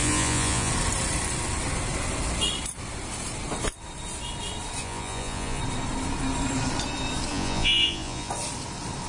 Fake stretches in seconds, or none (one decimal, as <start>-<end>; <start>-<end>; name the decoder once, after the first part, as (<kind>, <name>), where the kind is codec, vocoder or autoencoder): 0.0-0.7 (vocoder, Vocos); 4.8-5.6; 7.3-8.3